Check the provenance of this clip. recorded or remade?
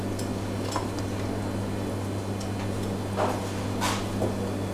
recorded